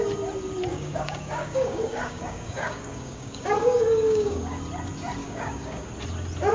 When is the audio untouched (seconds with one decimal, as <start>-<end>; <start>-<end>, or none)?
0.0-0.7; 4.6-5.2; 5.9-6.5